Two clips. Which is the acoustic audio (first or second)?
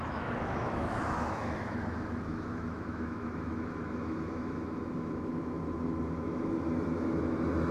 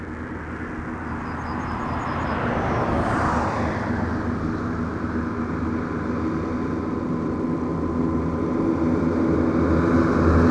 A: second